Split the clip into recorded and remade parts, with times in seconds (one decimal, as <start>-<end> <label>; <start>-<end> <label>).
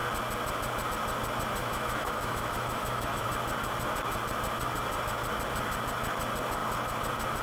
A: 0.0-1.6 recorded; 1.6-3.2 remade; 3.2-7.4 recorded